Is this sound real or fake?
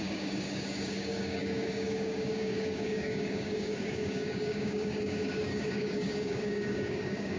fake